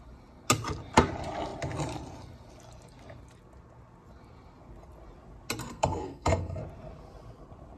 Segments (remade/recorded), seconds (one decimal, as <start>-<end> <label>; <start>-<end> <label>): 0.0-5.6 recorded; 5.6-6.6 remade; 6.6-7.8 recorded